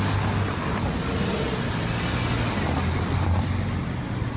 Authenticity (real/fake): real